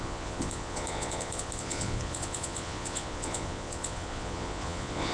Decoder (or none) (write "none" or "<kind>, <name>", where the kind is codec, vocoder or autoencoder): vocoder, Vocos